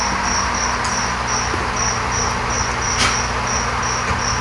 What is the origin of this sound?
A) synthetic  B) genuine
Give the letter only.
B